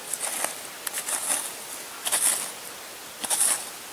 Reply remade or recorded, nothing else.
recorded